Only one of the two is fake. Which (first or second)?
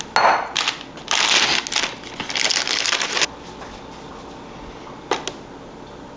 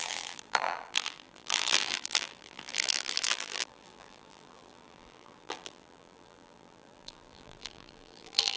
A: second